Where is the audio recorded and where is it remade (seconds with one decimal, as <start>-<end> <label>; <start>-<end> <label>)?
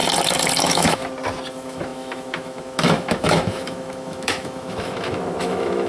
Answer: 0.0-0.6 recorded; 0.6-1.0 remade; 1.0-1.5 recorded; 1.5-5.9 remade